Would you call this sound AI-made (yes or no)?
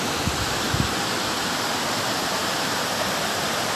no